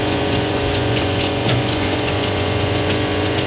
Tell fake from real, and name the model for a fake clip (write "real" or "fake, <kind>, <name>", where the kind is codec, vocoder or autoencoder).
fake, vocoder, Vocos